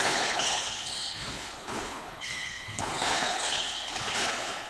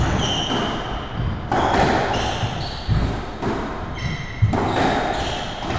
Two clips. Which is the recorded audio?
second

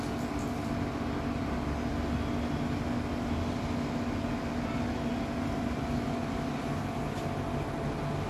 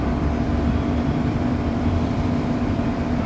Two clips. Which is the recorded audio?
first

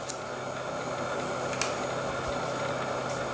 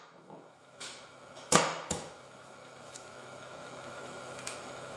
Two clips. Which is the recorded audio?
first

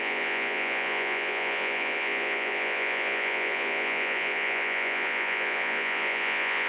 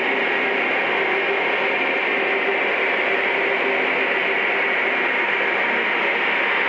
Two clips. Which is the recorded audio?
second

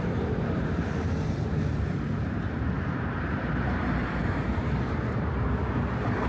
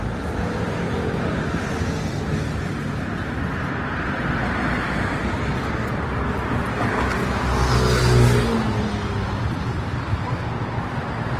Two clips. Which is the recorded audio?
second